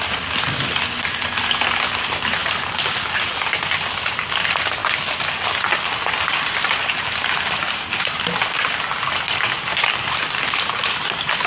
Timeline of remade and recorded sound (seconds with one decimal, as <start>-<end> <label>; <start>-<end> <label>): 0.0-11.5 recorded